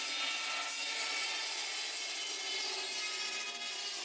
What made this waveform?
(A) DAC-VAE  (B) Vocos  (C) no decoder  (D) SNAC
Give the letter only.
C